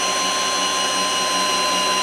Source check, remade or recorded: recorded